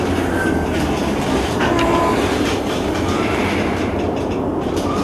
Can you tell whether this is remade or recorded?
recorded